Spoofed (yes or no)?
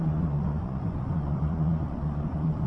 yes